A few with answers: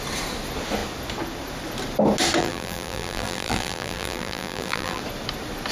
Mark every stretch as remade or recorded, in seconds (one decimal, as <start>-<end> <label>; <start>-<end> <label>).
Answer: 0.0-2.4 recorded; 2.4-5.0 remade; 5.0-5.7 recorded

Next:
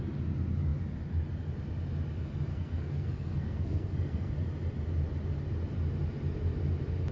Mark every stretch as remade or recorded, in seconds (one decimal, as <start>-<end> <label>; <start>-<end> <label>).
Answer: 0.0-2.5 recorded; 2.5-4.3 remade; 4.3-7.1 recorded

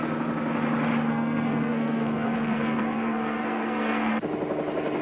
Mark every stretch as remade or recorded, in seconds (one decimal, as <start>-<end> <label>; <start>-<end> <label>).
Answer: 0.0-1.1 recorded; 1.1-4.1 remade; 4.1-5.0 recorded

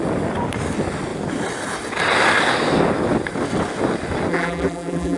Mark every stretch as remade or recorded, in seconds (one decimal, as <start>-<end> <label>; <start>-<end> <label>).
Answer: 0.0-4.3 recorded; 4.3-5.2 remade